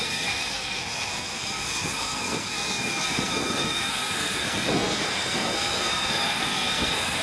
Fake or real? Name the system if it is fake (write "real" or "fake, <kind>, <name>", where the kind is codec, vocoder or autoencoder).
fake, codec, SNAC